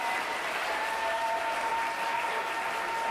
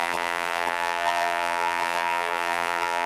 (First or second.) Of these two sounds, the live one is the first